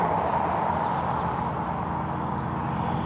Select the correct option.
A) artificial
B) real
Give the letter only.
B